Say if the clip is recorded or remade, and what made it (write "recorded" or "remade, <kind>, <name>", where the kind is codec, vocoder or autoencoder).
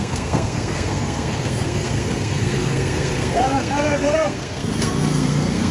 remade, codec, SNAC